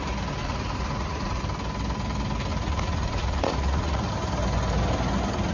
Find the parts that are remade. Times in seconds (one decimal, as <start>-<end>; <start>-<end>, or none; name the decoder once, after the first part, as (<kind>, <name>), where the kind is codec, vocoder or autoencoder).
0.4-1.4 (vocoder, Vocos); 2.5-4.1